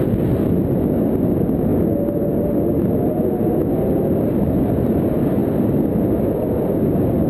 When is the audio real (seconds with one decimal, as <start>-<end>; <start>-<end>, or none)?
0.0-7.3